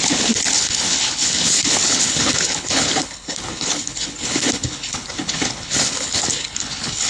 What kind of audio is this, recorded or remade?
remade